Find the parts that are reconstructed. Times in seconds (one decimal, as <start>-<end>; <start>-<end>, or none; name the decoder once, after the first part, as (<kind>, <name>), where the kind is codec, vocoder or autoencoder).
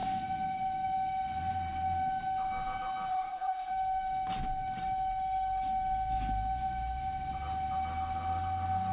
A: 3.1-3.7 (codec, SNAC)